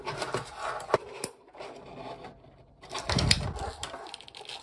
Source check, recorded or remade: recorded